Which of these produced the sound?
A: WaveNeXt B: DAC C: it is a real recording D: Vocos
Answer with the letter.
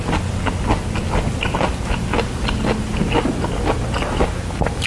C